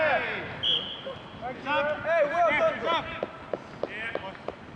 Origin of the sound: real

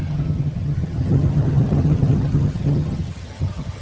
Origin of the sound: fake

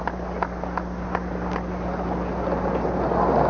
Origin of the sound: real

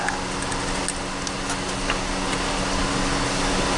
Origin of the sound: real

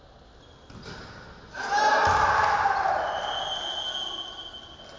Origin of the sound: real